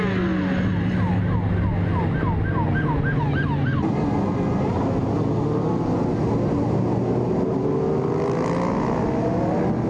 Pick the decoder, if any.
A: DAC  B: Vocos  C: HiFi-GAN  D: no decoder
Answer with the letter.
D